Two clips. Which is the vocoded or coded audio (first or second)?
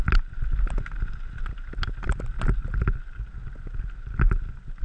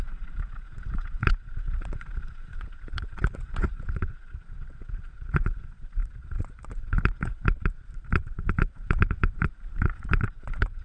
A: second